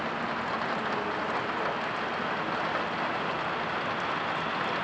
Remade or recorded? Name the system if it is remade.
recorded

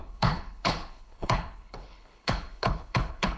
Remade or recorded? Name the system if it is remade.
remade, codec, HILCodec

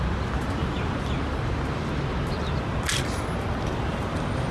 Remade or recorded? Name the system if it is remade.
recorded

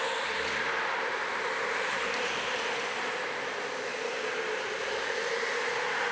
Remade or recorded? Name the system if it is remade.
recorded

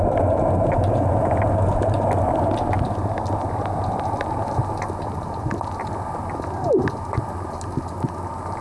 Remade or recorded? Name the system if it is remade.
recorded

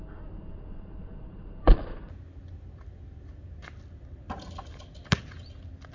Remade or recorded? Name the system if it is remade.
recorded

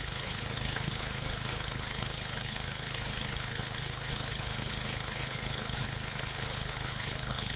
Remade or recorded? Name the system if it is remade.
remade, codec, HILCodec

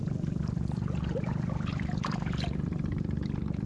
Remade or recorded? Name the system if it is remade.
recorded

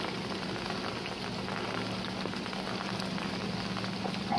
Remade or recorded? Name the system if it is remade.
recorded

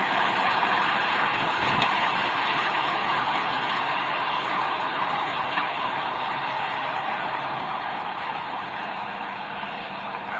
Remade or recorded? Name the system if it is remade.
remade, codec, HILCodec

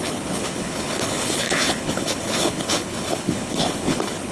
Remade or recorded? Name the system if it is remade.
remade, codec, HILCodec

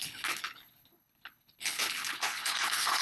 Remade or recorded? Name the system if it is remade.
remade, codec, HILCodec